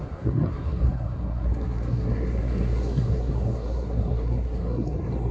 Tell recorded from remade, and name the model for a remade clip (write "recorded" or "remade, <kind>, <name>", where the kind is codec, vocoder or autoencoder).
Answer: remade, codec, SNAC